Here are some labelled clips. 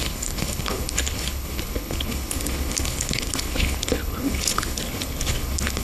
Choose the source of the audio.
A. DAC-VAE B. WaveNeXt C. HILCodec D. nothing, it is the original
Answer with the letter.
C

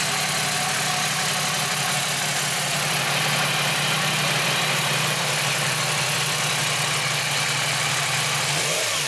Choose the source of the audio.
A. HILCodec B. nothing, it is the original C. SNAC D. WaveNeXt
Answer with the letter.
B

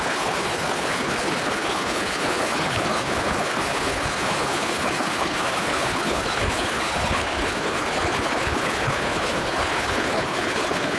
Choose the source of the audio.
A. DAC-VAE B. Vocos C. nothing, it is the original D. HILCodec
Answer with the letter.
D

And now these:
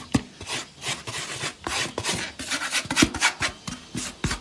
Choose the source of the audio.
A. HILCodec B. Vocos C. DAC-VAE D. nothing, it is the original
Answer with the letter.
D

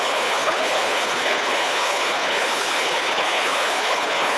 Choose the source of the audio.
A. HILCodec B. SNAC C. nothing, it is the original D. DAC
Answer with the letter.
A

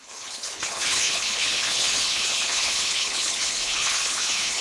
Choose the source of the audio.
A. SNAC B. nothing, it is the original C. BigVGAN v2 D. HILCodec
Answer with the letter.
D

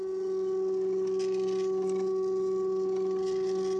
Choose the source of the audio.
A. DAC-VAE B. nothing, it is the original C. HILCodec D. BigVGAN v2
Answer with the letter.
B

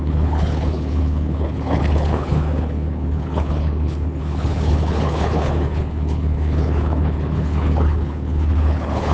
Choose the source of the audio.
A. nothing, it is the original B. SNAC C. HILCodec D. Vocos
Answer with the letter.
C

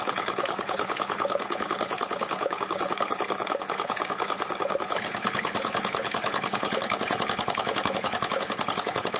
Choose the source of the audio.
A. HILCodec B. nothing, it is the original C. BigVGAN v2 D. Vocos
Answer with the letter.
A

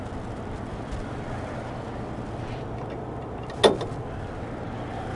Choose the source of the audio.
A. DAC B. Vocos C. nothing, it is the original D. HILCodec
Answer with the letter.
C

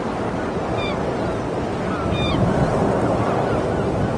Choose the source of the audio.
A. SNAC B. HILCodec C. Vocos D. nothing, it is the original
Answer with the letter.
D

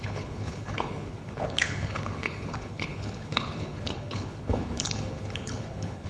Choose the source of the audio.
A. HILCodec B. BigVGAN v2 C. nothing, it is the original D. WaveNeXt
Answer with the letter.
A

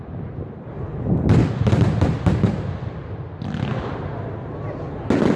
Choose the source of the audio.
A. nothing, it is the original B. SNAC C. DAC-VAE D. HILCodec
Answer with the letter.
A